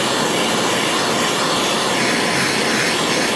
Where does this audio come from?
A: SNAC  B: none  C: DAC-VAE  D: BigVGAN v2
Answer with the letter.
B